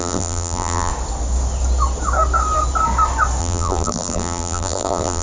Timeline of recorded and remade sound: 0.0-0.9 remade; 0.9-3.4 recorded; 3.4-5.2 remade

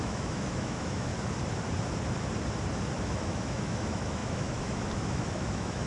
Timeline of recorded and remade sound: 0.0-1.1 remade; 1.1-3.0 recorded; 3.0-5.9 remade

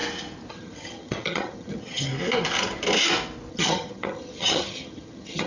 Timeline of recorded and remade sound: 0.0-0.5 recorded; 0.5-2.1 remade; 2.1-3.5 recorded; 3.5-5.5 remade

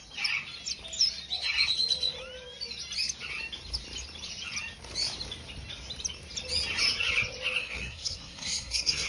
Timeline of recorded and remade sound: 0.0-7.6 recorded; 7.6-9.1 remade

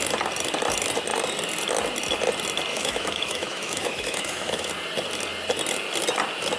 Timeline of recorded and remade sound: 0.0-2.7 recorded; 2.7-4.7 remade; 4.7-6.6 recorded

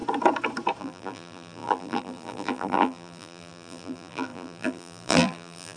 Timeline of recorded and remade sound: 0.0-0.8 recorded; 0.8-5.8 remade